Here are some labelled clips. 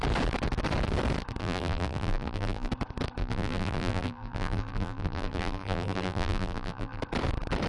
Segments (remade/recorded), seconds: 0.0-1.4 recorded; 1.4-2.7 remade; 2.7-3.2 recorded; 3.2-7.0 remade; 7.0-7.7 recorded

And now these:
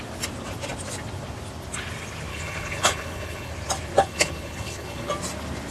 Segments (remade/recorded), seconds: 0.0-2.3 recorded; 2.3-3.5 remade; 3.5-4.0 recorded; 4.0-5.1 remade; 5.1-5.7 recorded